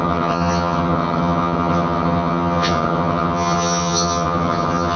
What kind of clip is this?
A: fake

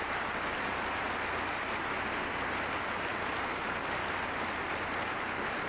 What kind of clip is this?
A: real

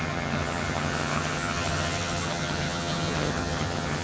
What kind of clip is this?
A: fake